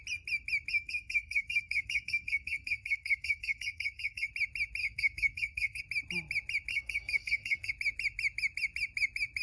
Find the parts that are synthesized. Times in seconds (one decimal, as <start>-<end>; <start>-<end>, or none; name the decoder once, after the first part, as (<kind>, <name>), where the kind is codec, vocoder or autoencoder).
0.7-4.3 (codec, SNAC); 4.8-5.8; 6.7-7.7